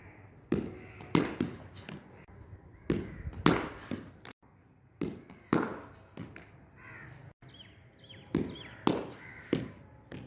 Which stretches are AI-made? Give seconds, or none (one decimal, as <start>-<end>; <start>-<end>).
none